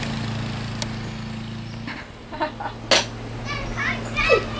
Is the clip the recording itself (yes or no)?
yes